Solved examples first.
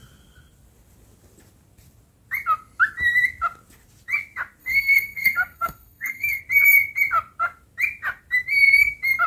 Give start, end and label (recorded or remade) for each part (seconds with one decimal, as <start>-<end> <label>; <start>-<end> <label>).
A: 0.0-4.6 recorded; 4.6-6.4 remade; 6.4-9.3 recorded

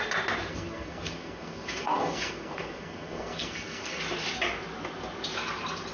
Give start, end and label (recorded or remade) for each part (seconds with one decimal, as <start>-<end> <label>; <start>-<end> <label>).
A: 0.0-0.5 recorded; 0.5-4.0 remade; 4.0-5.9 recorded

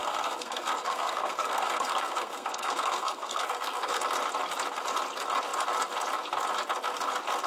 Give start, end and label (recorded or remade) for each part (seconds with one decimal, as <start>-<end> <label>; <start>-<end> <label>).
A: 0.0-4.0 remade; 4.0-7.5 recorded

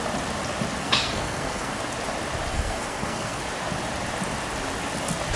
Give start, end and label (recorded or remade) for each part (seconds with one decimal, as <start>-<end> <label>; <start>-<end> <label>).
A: 0.0-0.8 recorded; 0.8-1.8 remade; 1.8-2.5 recorded; 2.5-3.4 remade; 3.4-5.4 recorded

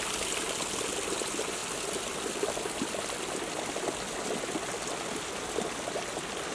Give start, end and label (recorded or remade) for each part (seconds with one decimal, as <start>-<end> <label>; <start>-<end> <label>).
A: 0.0-6.5 recorded

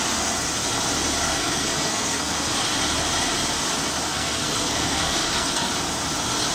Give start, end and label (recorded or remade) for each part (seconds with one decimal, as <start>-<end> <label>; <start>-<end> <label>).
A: 0.0-1.3 recorded; 1.3-2.5 remade; 2.5-4.1 recorded; 4.1-5.7 remade; 5.7-6.5 recorded

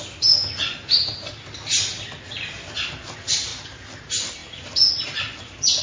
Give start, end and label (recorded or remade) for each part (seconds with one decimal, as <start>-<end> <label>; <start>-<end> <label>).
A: 0.0-5.8 recorded

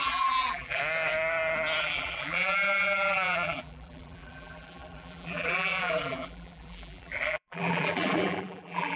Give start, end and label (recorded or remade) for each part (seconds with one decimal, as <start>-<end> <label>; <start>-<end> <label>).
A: 0.0-0.8 remade; 0.8-1.8 recorded; 1.8-9.0 remade